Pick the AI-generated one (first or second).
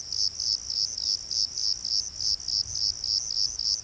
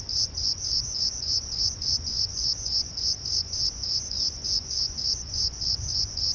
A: second